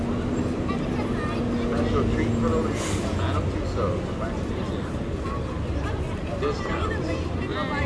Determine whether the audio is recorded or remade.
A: recorded